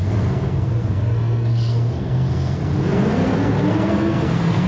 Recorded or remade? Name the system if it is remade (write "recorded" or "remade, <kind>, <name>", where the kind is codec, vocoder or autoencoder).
remade, codec, SNAC